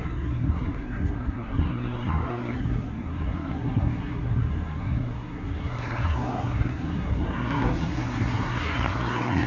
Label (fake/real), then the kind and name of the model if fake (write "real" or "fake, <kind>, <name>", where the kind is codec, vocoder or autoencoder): fake, codec, SNAC